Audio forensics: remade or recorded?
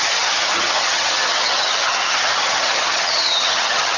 remade